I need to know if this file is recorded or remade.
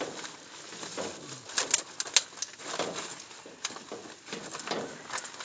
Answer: recorded